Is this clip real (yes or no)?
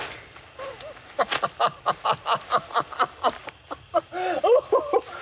yes